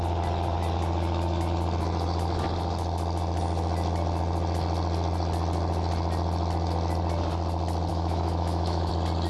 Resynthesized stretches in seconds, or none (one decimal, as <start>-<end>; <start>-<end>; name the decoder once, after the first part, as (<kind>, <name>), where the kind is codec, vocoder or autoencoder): 7.9-8.9 (autoencoder, DAC-VAE)